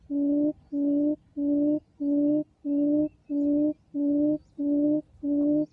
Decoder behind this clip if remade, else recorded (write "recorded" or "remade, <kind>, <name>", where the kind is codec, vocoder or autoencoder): recorded